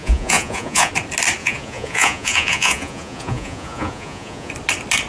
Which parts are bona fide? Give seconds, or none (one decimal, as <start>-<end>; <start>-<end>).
0.9-1.4; 4.5-5.1